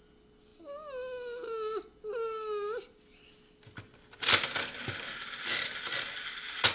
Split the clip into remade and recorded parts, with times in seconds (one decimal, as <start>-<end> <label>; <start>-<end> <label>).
0.0-6.7 recorded